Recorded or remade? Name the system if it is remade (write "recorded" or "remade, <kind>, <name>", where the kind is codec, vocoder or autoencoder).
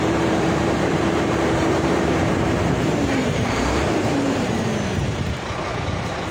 remade, vocoder, BigVGAN v2